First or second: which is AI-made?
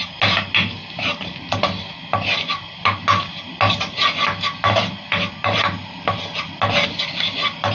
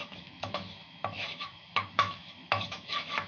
second